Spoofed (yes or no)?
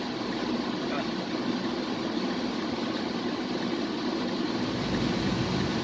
no